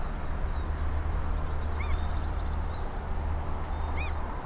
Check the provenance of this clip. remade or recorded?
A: recorded